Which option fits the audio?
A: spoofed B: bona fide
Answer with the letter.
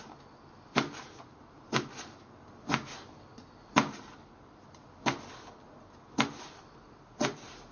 B